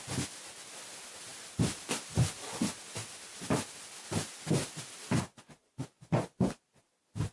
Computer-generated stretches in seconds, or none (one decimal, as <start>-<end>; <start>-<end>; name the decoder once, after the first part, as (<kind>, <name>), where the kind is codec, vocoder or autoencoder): 5.3-6.5 (vocoder, Vocos)